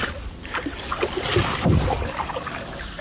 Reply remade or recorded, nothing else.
recorded